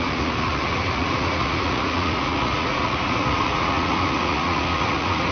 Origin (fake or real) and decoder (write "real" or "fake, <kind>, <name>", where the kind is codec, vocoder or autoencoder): fake, vocoder, Vocos